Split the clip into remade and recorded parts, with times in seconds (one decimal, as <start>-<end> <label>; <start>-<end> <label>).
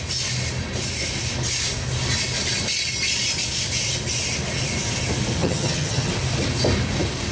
0.0-5.4 recorded; 5.4-6.1 remade; 6.1-7.3 recorded